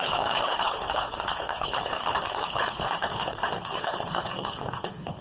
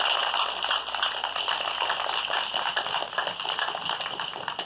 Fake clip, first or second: first